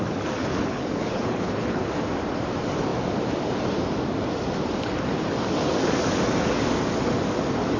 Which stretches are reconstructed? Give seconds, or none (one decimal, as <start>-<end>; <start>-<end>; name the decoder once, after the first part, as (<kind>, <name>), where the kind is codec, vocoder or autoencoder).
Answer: 0.4-1.9 (codec, HILCodec)